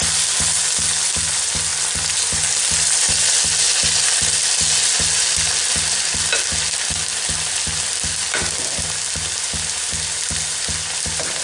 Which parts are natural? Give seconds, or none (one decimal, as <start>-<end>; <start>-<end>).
0.0-11.4